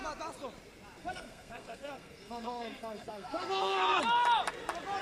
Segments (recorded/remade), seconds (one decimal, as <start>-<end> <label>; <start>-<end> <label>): 0.0-1.0 recorded; 1.0-4.0 remade; 4.0-5.0 recorded